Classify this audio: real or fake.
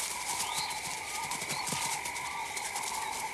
real